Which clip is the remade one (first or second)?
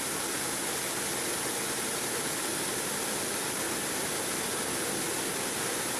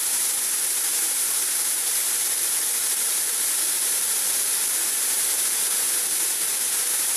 second